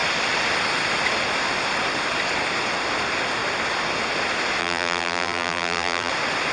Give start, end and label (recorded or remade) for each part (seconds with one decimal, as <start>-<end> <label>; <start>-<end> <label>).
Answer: 0.0-4.6 recorded; 4.6-6.1 remade; 6.1-6.5 recorded